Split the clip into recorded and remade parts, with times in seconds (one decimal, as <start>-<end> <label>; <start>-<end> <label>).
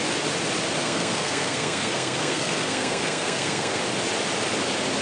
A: 0.0-0.8 recorded; 0.8-3.8 remade; 3.8-5.0 recorded